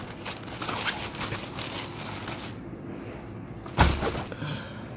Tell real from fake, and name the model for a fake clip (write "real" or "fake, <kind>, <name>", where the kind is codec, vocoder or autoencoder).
real